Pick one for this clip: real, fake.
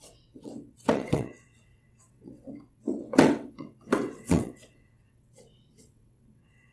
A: fake